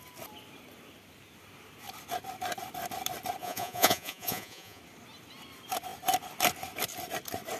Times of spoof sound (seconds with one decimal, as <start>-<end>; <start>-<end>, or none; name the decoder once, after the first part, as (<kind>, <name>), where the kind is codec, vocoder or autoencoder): 3.4-4.8 (vocoder, Vocos)